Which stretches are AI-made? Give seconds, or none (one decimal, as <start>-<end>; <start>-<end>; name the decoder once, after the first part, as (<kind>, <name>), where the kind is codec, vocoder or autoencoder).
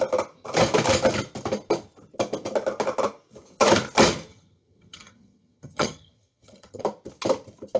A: 4.3-6.8 (vocoder, HiFi-GAN)